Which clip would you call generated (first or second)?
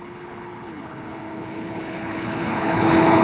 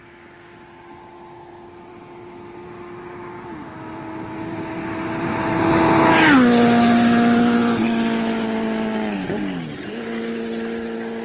first